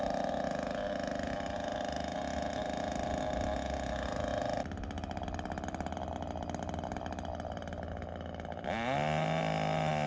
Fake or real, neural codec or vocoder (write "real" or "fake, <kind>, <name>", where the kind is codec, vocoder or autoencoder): real